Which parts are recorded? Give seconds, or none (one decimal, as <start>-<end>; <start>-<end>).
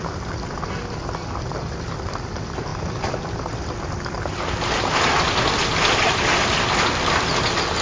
0.0-7.8